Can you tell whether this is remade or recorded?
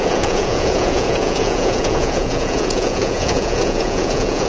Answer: remade